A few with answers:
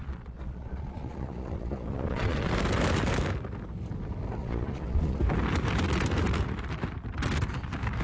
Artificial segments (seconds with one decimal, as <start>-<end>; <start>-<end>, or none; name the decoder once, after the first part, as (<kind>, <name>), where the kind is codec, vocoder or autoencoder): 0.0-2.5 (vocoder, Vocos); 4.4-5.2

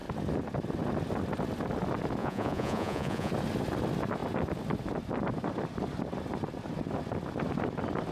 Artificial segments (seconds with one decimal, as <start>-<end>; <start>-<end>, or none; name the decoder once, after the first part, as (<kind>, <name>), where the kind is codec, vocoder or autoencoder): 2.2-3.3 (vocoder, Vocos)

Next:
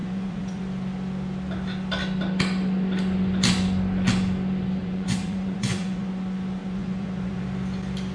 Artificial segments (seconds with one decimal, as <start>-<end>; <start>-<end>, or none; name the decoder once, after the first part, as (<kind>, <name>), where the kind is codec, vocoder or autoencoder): 0.0-0.6 (vocoder, Vocos); 4.8-6.1; 6.6-7.4

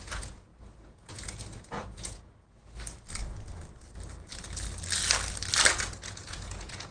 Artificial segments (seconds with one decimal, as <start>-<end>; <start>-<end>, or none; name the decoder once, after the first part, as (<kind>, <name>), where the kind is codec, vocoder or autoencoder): 0.0-2.6 (vocoder, Vocos); 5.7-6.9

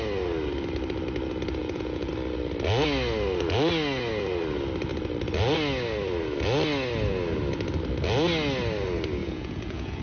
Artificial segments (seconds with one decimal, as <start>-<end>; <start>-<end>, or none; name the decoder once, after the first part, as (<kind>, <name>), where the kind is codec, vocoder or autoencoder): 1.6-2.1 (vocoder, Vocos); 9.2-10.0